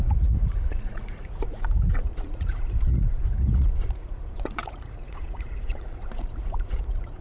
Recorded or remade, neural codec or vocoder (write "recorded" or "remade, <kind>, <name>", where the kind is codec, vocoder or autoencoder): remade, vocoder, Vocos